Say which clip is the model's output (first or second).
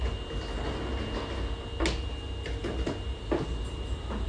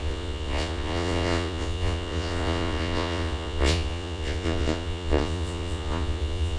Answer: second